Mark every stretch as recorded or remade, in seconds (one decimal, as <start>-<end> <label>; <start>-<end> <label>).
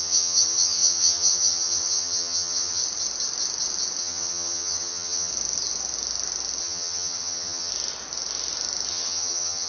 0.0-2.8 remade; 2.8-4.0 recorded; 4.0-5.3 remade; 5.3-6.6 recorded; 6.6-7.7 remade; 7.7-8.9 recorded; 8.9-9.7 remade